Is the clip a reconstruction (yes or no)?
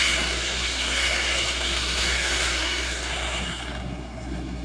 yes